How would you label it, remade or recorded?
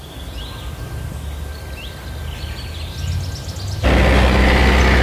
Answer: recorded